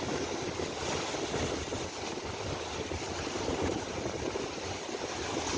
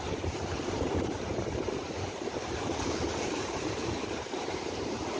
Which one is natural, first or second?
first